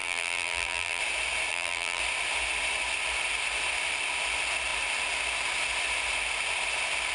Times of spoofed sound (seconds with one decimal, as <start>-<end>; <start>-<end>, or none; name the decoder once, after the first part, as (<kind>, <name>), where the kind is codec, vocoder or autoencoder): 0.0-1.0 (vocoder, BigVGAN v2); 1.5-2.0